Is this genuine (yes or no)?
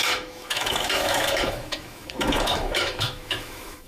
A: no